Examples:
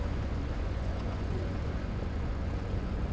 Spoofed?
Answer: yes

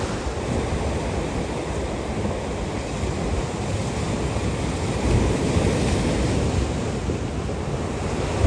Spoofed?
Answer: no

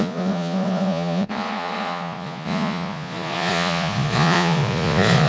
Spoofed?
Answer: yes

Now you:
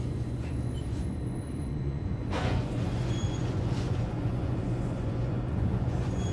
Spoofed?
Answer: yes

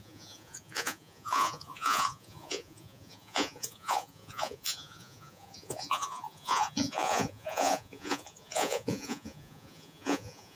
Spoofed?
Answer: yes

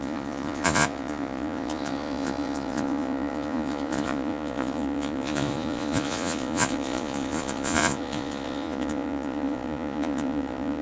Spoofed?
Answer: yes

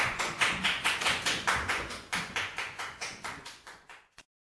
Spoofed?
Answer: yes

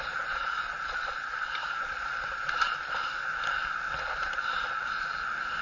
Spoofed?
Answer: no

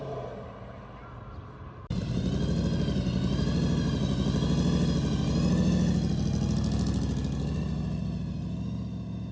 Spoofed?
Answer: no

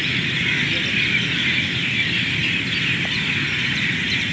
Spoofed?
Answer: no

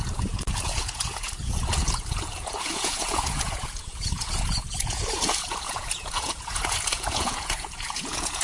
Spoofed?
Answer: yes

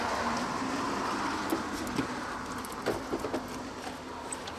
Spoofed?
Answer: no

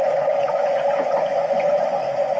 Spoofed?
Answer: yes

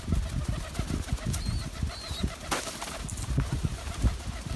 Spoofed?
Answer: no